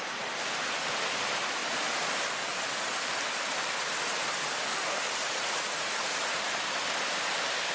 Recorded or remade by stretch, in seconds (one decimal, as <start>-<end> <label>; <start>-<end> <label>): 0.0-5.2 recorded; 5.2-6.4 remade; 6.4-7.7 recorded